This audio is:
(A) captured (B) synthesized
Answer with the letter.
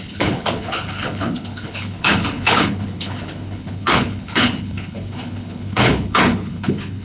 B